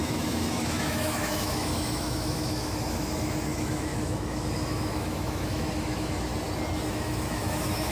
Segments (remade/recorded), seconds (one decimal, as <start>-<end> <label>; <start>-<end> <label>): 0.0-6.3 remade; 6.3-6.9 recorded; 6.9-7.9 remade